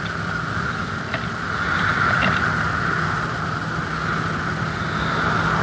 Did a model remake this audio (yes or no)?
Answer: no